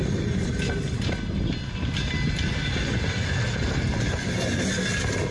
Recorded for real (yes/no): yes